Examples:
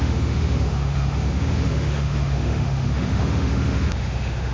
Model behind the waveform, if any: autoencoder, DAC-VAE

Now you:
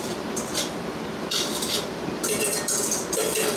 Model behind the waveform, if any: none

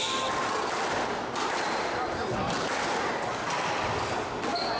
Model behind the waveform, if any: none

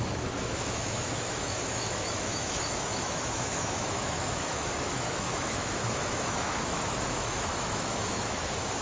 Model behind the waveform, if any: autoencoder, DAC-VAE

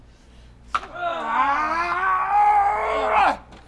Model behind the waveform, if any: none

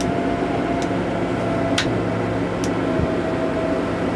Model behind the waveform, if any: none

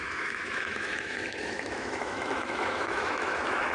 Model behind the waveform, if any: autoencoder, DAC-VAE